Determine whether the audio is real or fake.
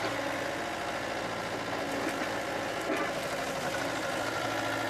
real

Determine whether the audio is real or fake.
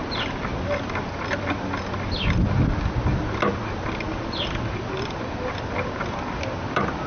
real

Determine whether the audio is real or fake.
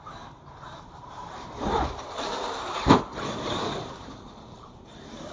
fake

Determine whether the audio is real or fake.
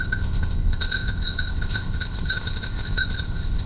fake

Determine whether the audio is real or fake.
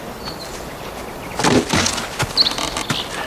real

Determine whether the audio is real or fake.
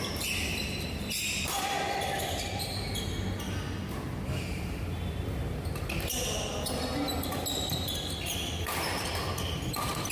real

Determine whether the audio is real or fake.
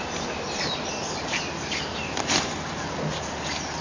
real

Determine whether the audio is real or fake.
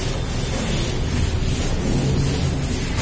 real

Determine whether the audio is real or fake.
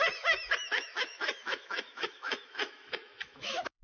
fake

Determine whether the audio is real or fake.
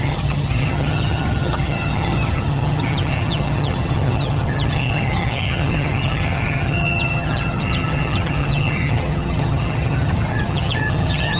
fake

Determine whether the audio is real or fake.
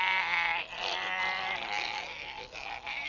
real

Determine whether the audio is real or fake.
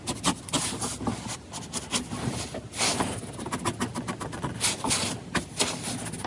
real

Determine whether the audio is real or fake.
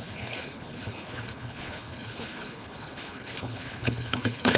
fake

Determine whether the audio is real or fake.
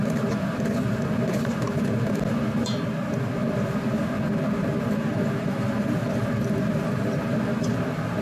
real